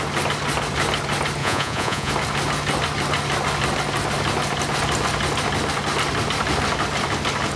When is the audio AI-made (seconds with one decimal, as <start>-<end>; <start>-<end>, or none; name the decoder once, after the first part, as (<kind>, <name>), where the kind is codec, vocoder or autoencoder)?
1.4-2.1 (vocoder, Vocos)